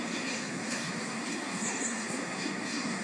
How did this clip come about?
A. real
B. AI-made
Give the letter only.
B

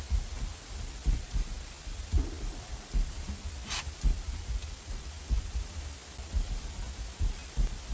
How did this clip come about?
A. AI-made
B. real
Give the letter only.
B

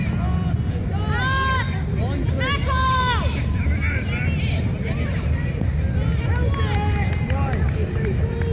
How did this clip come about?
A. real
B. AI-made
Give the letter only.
A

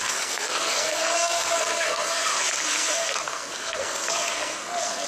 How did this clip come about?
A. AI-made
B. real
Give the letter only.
A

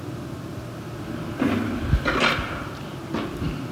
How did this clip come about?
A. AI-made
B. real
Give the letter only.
B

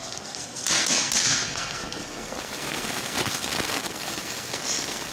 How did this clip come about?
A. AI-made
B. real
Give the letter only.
A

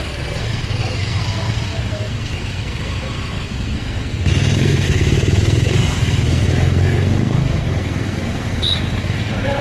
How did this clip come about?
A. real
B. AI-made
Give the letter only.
B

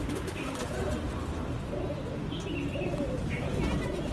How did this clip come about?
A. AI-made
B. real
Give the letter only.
B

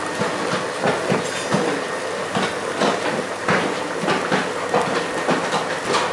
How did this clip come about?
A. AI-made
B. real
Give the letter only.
B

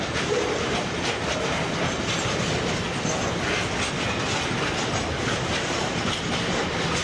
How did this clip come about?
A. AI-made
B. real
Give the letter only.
B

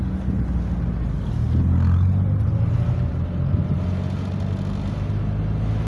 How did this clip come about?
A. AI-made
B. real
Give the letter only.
B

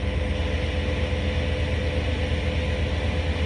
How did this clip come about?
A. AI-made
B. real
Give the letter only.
B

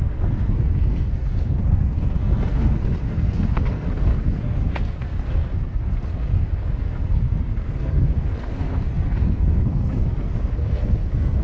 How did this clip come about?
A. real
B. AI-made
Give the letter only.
B